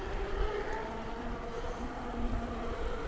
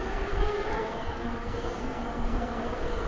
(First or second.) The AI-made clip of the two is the second